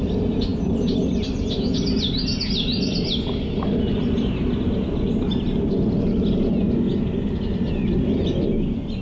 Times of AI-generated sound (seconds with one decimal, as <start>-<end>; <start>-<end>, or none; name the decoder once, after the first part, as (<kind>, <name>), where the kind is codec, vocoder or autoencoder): none